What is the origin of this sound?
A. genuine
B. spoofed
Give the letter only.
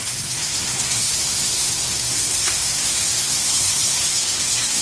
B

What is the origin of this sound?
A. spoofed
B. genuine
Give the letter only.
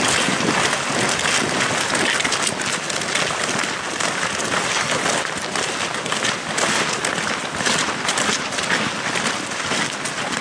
B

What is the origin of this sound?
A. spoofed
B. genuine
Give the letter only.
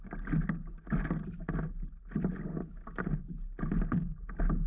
B